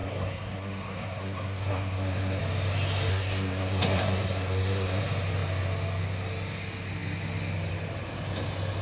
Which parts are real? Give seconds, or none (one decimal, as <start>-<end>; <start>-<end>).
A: 2.4-3.1; 5.0-8.8